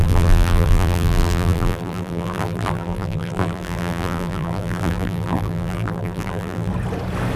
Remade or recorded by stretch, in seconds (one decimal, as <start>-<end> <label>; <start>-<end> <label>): 0.0-6.7 remade; 6.7-7.4 recorded